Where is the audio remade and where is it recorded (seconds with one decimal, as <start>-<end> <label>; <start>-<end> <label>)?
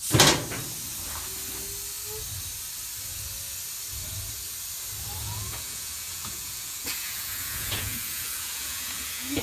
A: 0.0-5.2 recorded; 5.2-9.4 remade